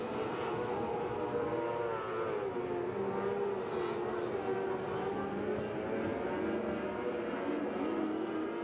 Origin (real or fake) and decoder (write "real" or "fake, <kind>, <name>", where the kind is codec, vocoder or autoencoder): real